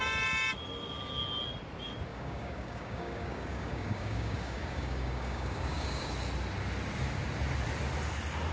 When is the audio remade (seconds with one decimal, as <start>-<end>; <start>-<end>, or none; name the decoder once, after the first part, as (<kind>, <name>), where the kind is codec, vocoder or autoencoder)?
2.1-6.1 (codec, DAC)